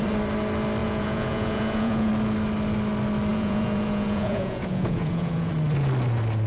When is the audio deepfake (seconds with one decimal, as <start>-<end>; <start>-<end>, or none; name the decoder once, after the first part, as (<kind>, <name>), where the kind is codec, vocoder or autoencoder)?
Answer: 0.8-2.1 (vocoder, Vocos); 3.3-5.5